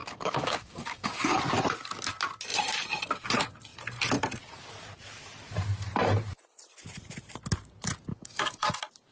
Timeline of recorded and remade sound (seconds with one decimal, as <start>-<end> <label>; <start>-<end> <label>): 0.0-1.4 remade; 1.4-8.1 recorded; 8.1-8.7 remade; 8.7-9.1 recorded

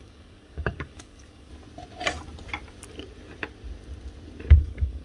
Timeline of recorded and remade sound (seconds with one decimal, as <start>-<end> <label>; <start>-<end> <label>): 0.0-1.5 remade; 1.5-4.5 recorded; 4.5-5.0 remade

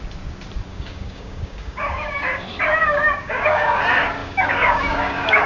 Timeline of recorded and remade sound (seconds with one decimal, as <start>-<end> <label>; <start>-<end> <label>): 0.0-0.7 recorded; 0.7-2.4 remade; 2.4-2.8 recorded; 2.8-3.8 remade; 3.8-4.2 recorded; 4.2-5.5 remade

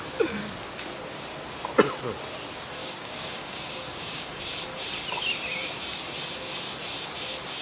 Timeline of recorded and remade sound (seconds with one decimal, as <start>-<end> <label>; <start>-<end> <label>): 0.0-2.8 recorded; 2.8-4.4 remade; 4.4-7.6 recorded